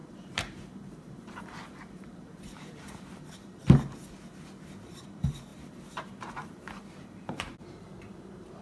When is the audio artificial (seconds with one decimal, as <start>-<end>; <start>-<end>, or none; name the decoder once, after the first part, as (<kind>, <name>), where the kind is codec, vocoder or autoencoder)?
0.0-3.6 (vocoder, BigVGAN v2); 4.9-8.6